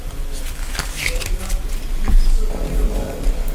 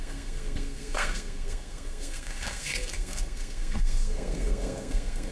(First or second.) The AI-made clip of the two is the second